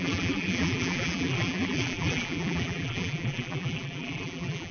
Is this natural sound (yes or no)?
no